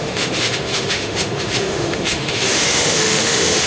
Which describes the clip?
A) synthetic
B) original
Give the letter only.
A